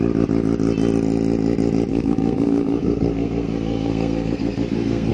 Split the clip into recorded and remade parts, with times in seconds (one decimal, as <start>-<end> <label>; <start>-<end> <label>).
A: 0.0-1.9 recorded; 1.9-5.1 remade